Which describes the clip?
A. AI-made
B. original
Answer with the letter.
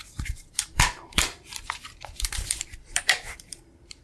A